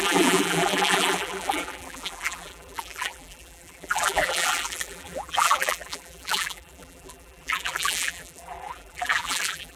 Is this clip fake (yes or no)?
yes